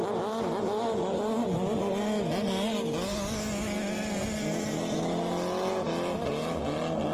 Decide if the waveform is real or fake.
real